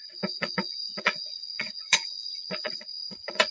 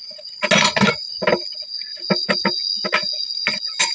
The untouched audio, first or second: second